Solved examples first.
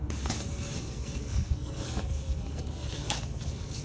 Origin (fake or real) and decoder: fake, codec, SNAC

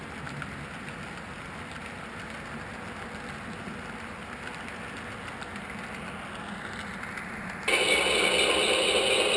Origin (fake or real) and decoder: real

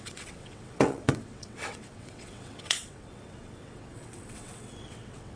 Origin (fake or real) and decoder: fake, vocoder, WaveNeXt